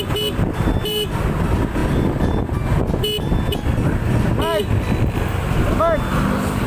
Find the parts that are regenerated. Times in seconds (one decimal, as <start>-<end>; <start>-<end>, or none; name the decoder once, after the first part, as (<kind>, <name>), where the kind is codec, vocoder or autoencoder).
none